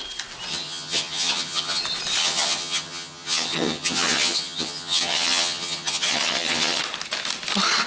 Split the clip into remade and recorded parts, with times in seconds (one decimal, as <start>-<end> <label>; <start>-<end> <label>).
0.0-0.5 recorded; 0.5-1.8 remade; 1.8-2.2 recorded; 2.2-6.8 remade; 6.8-7.9 recorded